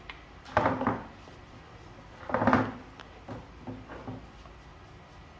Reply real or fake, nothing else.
real